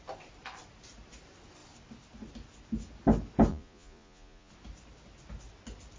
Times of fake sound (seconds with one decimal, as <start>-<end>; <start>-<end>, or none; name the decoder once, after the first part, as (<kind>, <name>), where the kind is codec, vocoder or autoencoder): 3.5-4.5 (vocoder, Vocos)